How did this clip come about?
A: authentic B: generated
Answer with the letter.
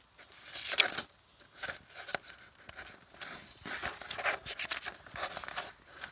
A